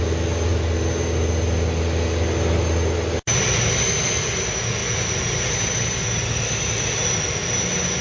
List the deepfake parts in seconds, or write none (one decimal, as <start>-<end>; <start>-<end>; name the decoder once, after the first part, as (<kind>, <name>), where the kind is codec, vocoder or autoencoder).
none